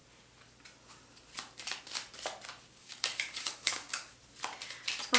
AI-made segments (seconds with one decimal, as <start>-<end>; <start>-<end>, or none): 2.8-4.1